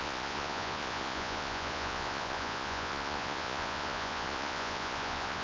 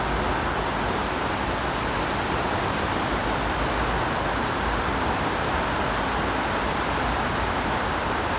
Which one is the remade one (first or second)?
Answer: first